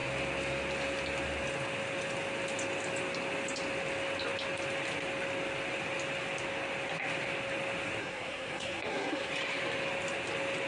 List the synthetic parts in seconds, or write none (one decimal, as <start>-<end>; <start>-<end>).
8.0-9.3

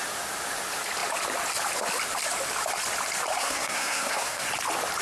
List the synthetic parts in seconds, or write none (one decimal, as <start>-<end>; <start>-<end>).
3.4-4.5